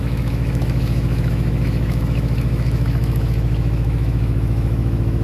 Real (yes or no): no